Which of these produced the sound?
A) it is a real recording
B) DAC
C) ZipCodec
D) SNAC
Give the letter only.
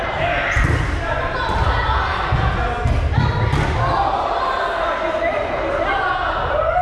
A